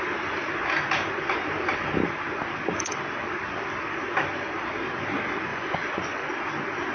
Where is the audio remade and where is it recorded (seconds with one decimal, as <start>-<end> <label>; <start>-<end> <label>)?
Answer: 0.0-5.5 recorded; 5.5-6.3 remade; 6.3-6.9 recorded